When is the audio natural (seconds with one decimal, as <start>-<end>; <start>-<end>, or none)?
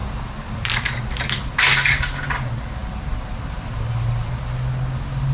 1.6-2.8; 4.3-5.3